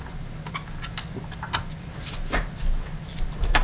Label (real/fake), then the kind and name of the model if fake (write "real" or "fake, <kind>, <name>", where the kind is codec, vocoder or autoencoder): real